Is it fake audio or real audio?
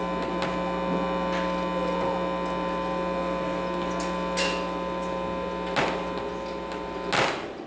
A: real